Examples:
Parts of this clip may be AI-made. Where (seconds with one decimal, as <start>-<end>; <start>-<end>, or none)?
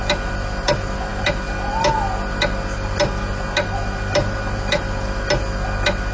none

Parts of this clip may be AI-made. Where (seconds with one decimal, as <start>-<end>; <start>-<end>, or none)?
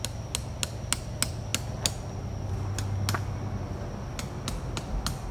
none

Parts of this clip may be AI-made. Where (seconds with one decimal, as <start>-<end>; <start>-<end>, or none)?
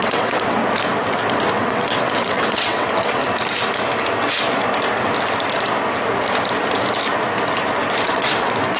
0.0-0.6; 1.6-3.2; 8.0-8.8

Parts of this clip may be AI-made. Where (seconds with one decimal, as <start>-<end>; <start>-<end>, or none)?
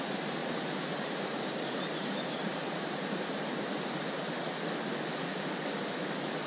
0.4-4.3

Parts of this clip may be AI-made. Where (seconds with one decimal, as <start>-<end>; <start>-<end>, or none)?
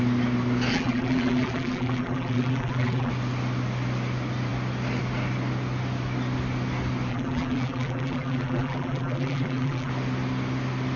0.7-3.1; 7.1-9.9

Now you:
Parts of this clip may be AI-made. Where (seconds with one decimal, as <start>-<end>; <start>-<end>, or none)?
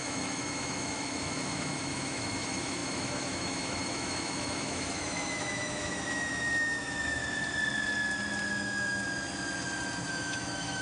0.0-7.2; 8.5-9.0; 10.1-10.8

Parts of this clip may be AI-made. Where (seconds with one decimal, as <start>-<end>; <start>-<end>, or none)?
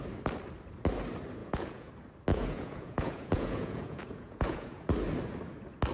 1.4-1.9; 2.3-4.9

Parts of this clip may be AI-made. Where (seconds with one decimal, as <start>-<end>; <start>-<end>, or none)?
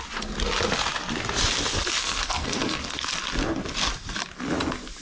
2.0-3.2